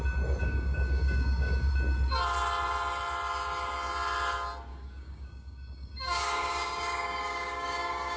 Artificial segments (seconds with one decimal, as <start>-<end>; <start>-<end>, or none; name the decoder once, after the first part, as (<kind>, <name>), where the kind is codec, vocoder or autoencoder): 0.4-1.7 (codec, DAC); 4.7-8.2